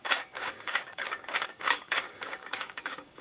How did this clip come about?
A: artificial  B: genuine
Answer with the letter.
A